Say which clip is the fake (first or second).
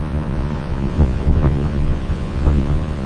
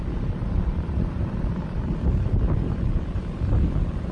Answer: first